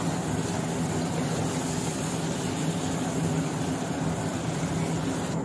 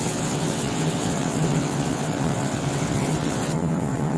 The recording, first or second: first